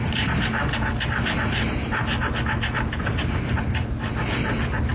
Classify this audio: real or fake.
real